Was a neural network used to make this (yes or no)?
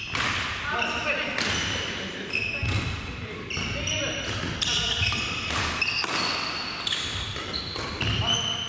no